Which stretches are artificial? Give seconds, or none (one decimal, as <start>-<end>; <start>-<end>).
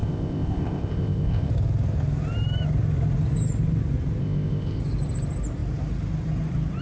0.0-1.5; 4.2-4.8